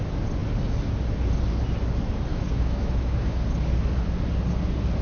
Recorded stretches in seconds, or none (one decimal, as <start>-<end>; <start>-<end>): 0.0-2.3; 3.4-5.0